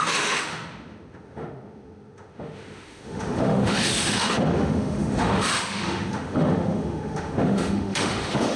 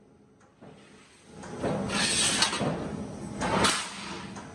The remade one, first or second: first